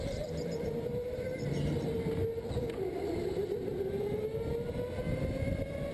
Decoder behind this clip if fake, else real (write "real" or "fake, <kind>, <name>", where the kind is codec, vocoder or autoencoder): real